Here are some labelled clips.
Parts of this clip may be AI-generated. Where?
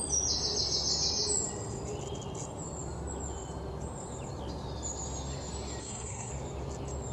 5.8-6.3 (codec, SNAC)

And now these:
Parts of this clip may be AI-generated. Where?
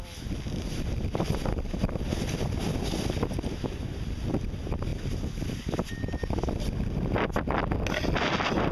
none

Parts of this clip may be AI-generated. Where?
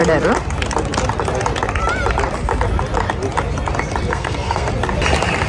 4.1-4.7 (codec, SNAC)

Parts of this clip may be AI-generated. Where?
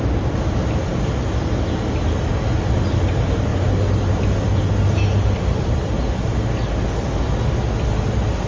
none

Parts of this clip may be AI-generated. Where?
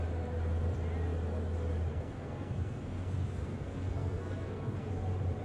1.9-4.9 (codec, SNAC)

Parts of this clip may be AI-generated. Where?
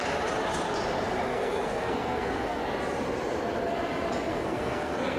1.3-2.6 (codec, SNAC); 4.3-5.2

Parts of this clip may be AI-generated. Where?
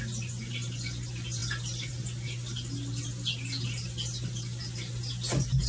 none